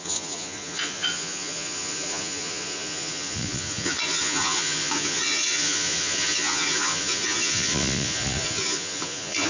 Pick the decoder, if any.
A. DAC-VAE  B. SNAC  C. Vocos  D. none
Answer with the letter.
C